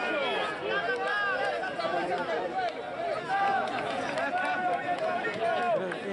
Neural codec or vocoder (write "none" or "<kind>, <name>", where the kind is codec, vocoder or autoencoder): none